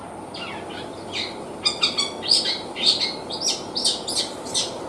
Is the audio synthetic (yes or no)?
no